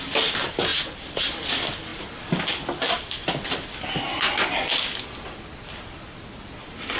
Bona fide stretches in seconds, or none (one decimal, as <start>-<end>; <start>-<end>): 0.0-7.0